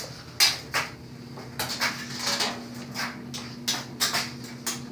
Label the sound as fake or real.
real